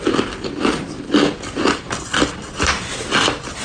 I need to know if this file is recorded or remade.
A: recorded